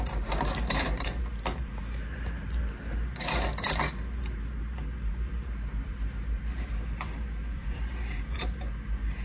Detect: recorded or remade remade